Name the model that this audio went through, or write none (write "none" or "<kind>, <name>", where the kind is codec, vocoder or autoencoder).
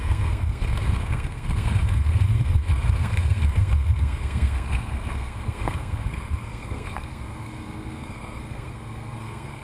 codec, SNAC